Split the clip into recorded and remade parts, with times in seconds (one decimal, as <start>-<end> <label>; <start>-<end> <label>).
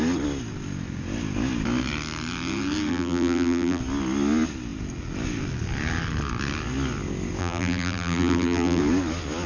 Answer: 0.0-2.9 recorded; 2.9-3.8 remade; 3.8-7.4 recorded; 7.4-8.8 remade; 8.8-9.5 recorded